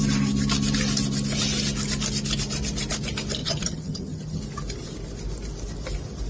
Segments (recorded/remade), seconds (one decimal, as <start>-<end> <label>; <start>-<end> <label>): 0.0-3.4 recorded; 3.4-4.4 remade; 4.4-6.3 recorded